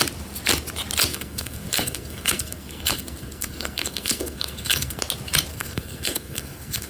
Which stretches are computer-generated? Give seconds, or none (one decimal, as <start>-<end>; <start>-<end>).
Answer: 1.1-5.0; 5.5-6.9